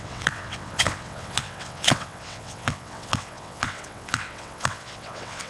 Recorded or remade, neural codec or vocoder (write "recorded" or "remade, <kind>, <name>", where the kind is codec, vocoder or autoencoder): remade, vocoder, WaveNeXt